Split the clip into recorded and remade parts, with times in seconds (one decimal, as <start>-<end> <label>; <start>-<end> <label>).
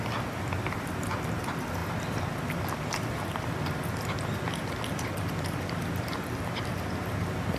0.0-7.6 recorded